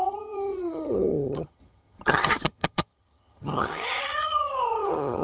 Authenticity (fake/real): fake